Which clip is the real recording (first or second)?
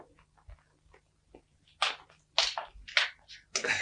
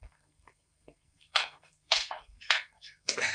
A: first